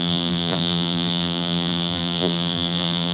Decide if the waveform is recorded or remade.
remade